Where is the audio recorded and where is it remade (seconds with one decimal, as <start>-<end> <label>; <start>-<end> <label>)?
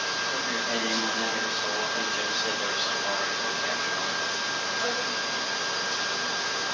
0.0-6.7 recorded